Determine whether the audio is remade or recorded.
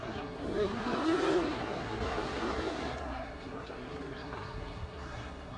remade